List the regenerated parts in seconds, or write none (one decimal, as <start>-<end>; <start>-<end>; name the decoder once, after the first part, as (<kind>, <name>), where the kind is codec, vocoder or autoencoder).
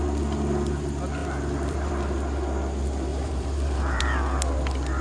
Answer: 1.2-1.9 (vocoder, BigVGAN v2); 3.1-4.0